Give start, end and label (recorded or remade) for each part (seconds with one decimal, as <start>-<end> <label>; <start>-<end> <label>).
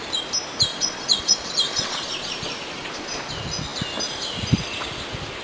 0.0-0.7 recorded; 0.7-3.3 remade; 3.3-5.4 recorded